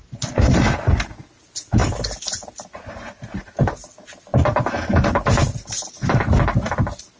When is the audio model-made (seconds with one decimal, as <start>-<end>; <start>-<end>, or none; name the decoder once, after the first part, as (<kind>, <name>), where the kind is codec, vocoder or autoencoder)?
none